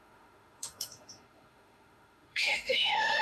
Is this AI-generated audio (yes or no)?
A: yes